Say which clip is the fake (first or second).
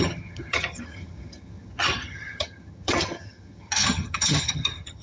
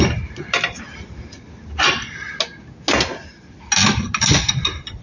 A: first